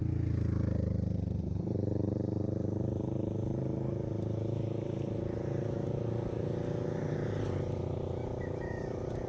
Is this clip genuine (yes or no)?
yes